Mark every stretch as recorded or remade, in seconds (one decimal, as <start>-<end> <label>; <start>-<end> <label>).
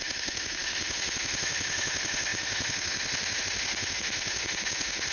0.0-5.1 remade